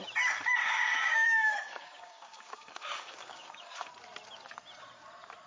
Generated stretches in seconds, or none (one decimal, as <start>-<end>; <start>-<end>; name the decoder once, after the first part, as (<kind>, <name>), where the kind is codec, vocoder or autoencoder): 0.6-3.9 (codec, DAC)